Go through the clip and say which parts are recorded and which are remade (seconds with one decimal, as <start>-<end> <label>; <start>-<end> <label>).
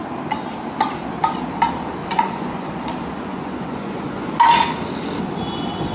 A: 0.0-2.0 recorded; 2.0-2.7 remade; 2.7-3.3 recorded; 3.3-4.3 remade; 4.3-5.9 recorded